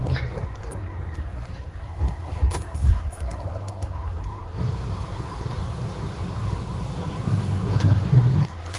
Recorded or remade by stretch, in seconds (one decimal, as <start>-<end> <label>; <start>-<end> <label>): 0.0-8.8 remade